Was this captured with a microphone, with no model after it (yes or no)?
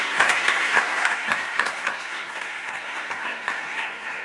no